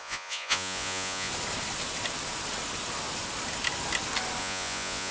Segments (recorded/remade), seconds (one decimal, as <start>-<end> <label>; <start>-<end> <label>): 0.0-1.3 remade; 1.3-4.4 recorded; 4.4-5.1 remade